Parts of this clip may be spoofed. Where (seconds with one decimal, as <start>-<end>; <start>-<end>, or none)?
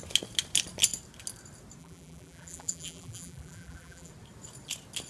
1.8-4.1